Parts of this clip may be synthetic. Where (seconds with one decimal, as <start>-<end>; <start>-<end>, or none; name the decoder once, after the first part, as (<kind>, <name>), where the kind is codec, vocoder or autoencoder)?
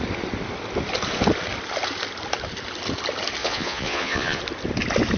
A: 3.4-4.4 (vocoder, Vocos)